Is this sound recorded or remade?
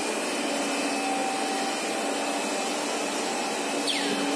recorded